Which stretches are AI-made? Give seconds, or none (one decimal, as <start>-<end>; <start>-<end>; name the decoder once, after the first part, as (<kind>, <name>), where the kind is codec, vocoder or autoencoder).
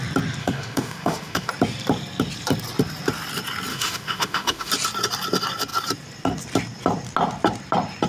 0.4-1.5 (autoencoder, DAC-VAE); 3.7-4.7